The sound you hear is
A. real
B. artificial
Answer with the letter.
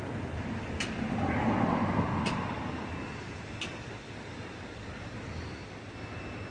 A